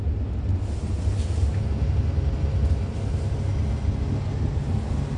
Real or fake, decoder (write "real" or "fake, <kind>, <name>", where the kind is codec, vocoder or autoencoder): real